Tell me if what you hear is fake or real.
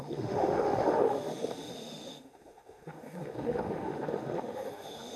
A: fake